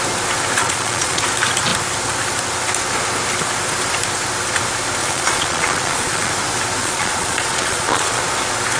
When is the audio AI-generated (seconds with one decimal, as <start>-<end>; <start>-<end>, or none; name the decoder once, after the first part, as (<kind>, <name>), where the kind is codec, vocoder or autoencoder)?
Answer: 0.6-1.2 (vocoder, Vocos); 5.0-6.3; 6.8-8.2

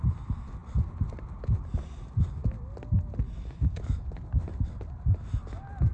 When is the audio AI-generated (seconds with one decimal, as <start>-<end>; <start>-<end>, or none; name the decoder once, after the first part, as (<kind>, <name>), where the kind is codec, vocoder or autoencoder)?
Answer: none

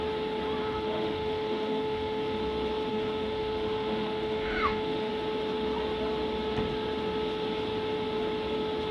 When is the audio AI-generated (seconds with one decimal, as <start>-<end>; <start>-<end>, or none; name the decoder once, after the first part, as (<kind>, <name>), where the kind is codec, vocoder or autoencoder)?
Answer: 0.6-2.4 (autoencoder, DAC-VAE); 2.9-5.1

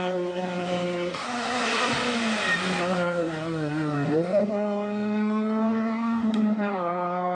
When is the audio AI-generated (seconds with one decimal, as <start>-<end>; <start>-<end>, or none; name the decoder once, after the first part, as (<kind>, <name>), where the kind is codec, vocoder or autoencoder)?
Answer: 0.0-1.9 (codec, SNAC); 2.8-7.3

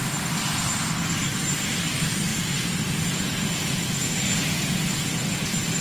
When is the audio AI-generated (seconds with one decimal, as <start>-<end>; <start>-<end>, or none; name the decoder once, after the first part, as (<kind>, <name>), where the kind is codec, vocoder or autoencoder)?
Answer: 2.3-5.1 (vocoder, Vocos)

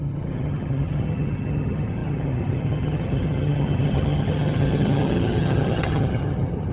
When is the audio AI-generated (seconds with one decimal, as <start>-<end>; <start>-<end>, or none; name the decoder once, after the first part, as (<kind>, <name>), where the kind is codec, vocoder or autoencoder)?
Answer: 0.0-6.7 (vocoder, HiFi-GAN)

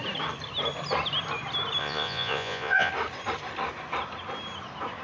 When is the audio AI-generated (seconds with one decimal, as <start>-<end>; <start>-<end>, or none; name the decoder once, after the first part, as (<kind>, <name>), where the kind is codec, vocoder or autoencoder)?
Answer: 1.8-2.9 (vocoder, Vocos)